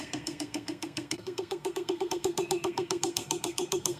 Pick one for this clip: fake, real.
fake